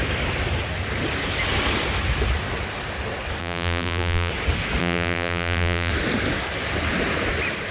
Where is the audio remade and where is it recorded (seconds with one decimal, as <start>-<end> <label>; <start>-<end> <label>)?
0.0-3.4 recorded; 3.4-4.3 remade; 4.3-4.8 recorded; 4.8-5.9 remade; 5.9-7.7 recorded